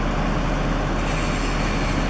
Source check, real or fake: real